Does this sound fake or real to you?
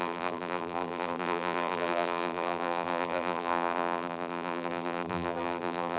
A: fake